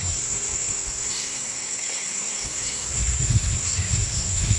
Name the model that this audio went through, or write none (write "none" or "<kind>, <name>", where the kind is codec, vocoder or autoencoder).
codec, SNAC